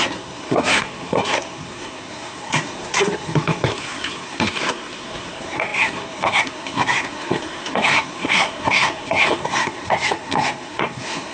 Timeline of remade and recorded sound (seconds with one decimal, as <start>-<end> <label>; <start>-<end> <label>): 0.0-11.3 remade